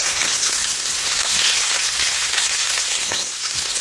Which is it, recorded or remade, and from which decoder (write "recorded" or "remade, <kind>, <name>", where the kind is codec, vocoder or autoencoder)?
remade, codec, SNAC